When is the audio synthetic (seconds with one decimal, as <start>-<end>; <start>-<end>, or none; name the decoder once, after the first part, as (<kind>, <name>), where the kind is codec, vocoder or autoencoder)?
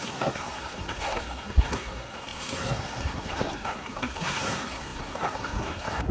0.0-6.1 (codec, SNAC)